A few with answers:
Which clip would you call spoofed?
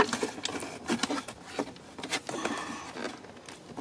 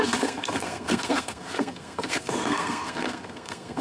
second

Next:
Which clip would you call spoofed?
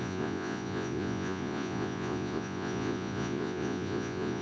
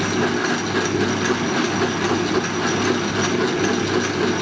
first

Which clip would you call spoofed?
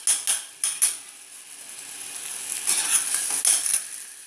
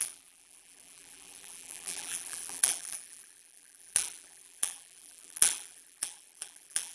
second